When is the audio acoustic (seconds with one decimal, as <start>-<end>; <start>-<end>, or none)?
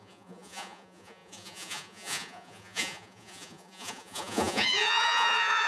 none